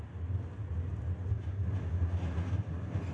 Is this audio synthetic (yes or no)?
no